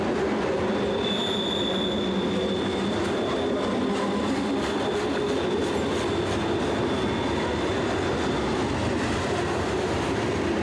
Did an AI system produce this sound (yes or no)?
no